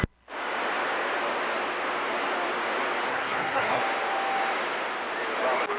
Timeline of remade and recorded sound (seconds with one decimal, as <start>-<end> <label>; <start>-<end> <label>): 0.0-3.1 recorded; 3.1-3.8 remade; 3.8-5.8 recorded